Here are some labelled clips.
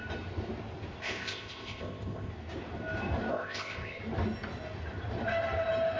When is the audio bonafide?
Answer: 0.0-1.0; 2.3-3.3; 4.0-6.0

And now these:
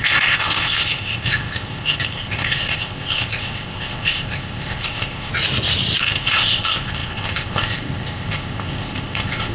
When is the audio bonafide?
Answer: 5.3-6.0

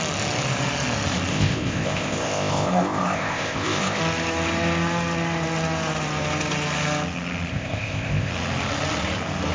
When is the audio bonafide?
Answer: 0.0-1.3; 4.0-7.5; 8.3-9.5

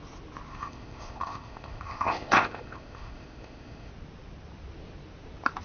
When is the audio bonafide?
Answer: 0.0-0.5; 3.9-5.6

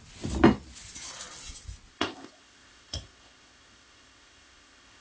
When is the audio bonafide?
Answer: 0.0-1.9

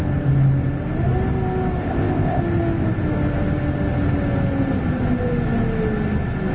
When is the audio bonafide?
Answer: 0.0-1.8; 2.4-6.5

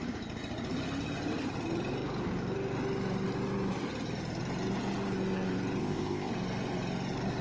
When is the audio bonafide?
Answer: 0.0-5.8; 6.3-7.4